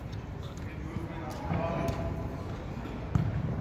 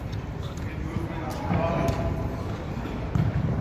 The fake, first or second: second